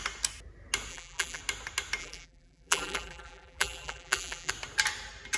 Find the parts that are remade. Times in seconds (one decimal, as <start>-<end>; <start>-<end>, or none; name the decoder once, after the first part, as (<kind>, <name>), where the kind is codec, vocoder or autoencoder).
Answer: 0.9-1.4 (vocoder, BigVGAN v2); 2.0-4.5